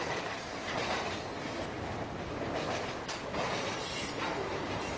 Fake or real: real